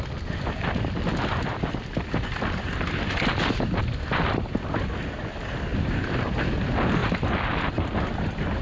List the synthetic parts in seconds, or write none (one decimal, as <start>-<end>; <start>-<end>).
none